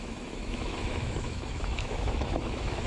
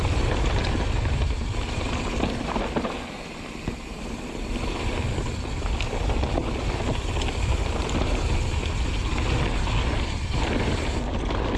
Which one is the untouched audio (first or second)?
second